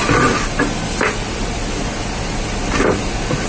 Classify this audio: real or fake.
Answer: real